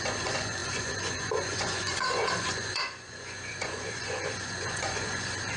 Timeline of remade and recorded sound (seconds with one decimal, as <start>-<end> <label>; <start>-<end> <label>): 0.0-5.6 remade